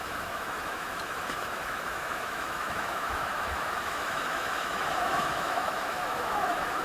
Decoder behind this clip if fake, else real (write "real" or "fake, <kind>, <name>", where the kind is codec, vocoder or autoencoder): fake, autoencoder, DAC-VAE